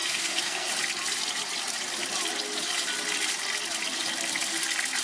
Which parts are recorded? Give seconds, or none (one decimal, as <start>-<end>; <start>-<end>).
0.7-5.0